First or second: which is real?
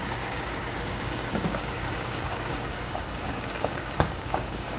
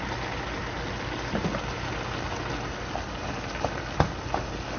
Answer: second